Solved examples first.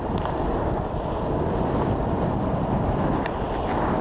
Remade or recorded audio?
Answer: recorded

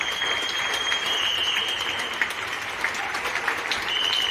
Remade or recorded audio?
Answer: remade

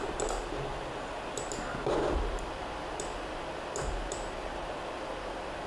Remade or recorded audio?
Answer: recorded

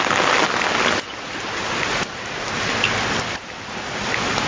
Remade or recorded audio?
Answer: recorded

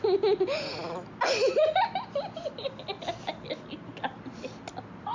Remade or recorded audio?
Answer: recorded